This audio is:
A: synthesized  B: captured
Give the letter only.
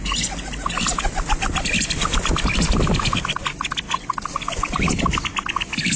B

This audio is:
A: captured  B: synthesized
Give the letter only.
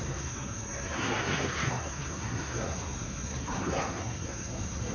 B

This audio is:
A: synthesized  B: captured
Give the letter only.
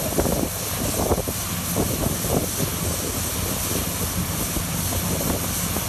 B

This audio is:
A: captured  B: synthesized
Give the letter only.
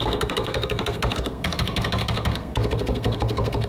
B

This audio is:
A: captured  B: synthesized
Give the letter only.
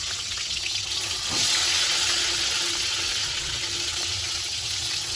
B